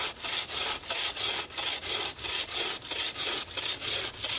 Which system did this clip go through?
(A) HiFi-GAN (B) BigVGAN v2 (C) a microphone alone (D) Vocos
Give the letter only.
C